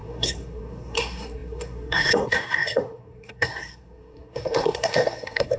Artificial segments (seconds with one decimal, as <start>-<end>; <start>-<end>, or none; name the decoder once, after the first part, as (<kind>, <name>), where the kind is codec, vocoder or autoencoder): 0.0-5.6 (codec, SNAC)